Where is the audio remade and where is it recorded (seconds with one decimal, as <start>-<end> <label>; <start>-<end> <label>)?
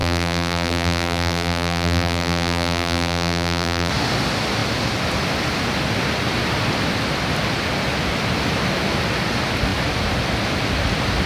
0.0-3.9 remade; 3.9-11.3 recorded